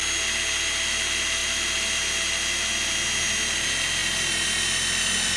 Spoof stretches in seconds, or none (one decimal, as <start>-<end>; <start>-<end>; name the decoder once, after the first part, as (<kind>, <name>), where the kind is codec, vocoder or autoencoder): none